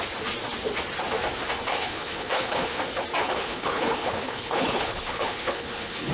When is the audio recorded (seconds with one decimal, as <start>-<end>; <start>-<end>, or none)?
0.0-1.7; 2.8-3.2